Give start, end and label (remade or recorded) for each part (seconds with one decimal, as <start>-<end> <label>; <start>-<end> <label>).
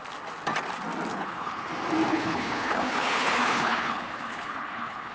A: 0.0-1.1 recorded; 1.1-1.7 remade; 1.7-2.1 recorded; 2.1-5.1 remade